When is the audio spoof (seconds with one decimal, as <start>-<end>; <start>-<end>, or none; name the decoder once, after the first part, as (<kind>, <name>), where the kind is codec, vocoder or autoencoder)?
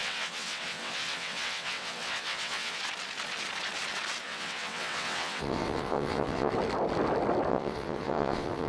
0.0-2.8 (vocoder, WaveNeXt); 4.2-6.5; 7.5-8.7